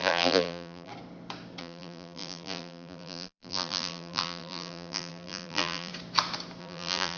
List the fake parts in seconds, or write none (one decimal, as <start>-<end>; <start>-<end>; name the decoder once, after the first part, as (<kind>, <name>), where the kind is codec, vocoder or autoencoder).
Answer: 0.0-0.9 (vocoder, BigVGAN v2); 1.6-5.9; 6.6-7.2